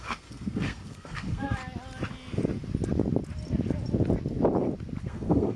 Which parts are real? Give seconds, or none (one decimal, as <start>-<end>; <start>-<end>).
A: 1.6-5.0